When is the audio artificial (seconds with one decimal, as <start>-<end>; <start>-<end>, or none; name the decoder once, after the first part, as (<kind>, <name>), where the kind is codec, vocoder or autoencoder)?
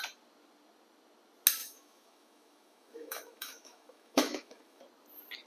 1.6-4.8 (autoencoder, DAC-VAE)